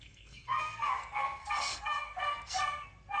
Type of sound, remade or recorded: remade